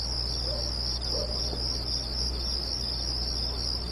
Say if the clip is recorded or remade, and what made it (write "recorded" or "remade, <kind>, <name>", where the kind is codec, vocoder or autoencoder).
recorded